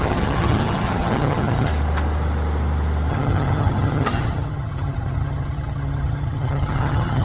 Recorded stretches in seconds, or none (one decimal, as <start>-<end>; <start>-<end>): 1.7-3.1